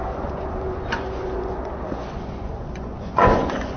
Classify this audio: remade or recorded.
remade